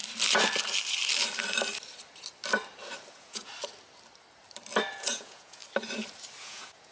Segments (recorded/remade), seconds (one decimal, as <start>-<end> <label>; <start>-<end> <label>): 0.0-3.1 recorded; 3.1-3.5 remade; 3.5-4.9 recorded; 4.9-5.6 remade; 5.6-6.4 recorded; 6.4-6.9 remade